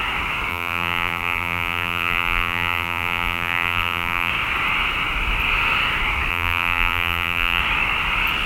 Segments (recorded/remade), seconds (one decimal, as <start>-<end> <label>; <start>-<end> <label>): 0.0-0.5 recorded; 0.5-4.3 remade; 4.3-6.3 recorded; 6.3-7.6 remade; 7.6-8.5 recorded